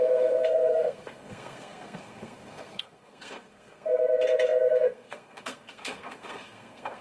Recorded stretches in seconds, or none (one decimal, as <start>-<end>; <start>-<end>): none